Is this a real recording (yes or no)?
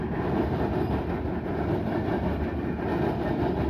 yes